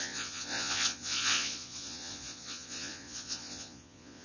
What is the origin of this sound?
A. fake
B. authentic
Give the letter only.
A